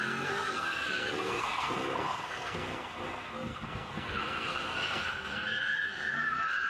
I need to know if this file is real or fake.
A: fake